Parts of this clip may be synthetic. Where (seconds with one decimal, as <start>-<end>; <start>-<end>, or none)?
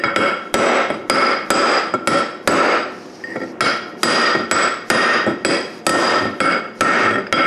5.9-6.6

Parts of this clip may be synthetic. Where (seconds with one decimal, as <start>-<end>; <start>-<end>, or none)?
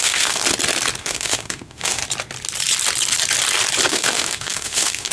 0.0-0.4; 1.0-2.0; 3.9-5.1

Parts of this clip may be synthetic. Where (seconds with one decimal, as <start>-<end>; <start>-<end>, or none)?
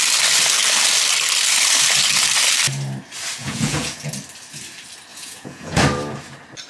3.4-4.1; 5.1-5.8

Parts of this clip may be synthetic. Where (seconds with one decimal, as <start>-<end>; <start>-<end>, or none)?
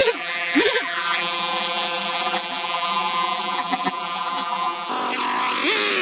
0.0-4.9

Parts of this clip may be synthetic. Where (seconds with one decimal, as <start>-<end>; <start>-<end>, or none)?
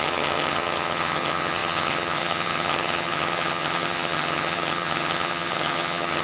0.0-6.2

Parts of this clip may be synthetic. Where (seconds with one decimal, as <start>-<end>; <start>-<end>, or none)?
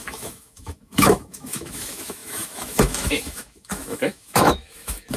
0.0-5.2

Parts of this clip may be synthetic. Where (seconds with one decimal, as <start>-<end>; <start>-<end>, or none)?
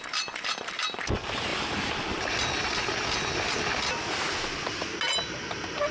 1.5-2.2